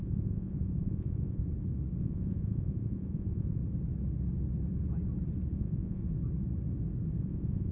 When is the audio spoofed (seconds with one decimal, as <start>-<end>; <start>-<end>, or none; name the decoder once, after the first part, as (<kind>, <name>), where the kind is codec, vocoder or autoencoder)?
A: 0.0-1.4 (vocoder, Vocos); 2.0-3.6; 5.5-6.0; 7.2-7.7